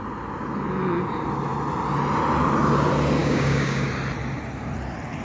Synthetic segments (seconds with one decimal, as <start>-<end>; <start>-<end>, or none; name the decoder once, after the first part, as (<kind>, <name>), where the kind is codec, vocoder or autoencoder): 3.2-3.9 (codec, DAC)